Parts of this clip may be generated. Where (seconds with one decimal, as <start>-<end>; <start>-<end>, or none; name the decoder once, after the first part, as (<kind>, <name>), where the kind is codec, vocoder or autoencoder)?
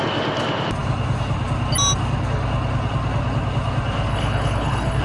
4.1-5.0 (codec, HILCodec)